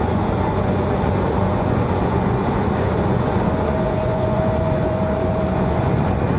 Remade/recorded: remade